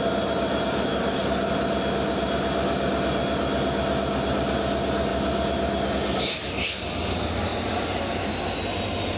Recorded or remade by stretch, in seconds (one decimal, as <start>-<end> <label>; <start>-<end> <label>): 0.0-0.9 recorded; 0.9-1.5 remade; 1.5-9.2 recorded

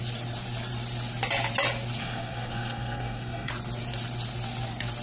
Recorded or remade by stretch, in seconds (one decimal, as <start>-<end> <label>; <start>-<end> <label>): 0.0-2.0 recorded; 2.0-3.5 remade; 3.5-5.0 recorded

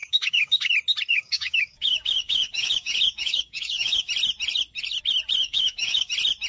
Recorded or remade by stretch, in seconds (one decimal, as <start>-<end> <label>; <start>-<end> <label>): 0.0-0.7 remade; 0.7-1.1 recorded; 1.1-4.1 remade; 4.1-5.4 recorded; 5.4-6.1 remade; 6.1-6.5 recorded

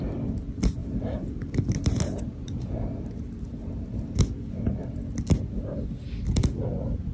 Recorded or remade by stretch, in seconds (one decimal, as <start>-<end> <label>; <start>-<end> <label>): 0.0-0.8 recorded; 0.8-4.2 remade; 4.2-7.1 recorded

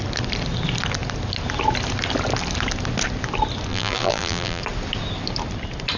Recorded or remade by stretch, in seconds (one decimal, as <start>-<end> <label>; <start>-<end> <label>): 0.0-3.7 recorded; 3.7-4.6 remade; 4.6-6.0 recorded